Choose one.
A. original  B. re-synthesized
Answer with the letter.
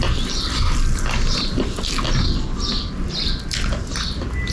A